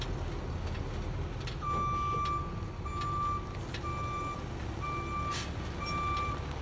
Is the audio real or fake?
real